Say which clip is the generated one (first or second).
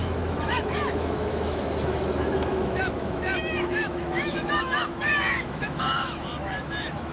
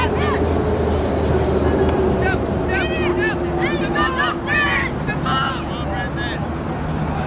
first